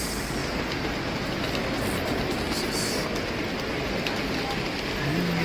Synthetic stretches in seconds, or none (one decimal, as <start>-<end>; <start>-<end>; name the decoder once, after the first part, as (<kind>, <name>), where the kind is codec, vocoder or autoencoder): none